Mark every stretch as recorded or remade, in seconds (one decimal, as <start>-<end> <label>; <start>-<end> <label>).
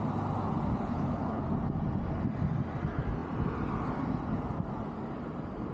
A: 0.0-0.7 recorded; 0.7-1.4 remade; 1.4-5.7 recorded